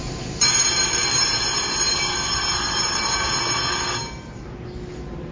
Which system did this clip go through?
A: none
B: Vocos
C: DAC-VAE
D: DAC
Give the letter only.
A